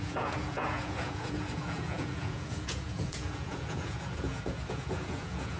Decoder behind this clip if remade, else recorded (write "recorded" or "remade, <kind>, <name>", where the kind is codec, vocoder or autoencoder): remade, vocoder, Vocos